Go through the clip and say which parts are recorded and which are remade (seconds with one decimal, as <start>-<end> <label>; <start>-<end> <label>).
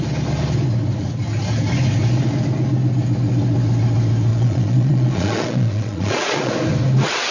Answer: 0.0-4.3 recorded; 4.3-6.5 remade; 6.5-7.3 recorded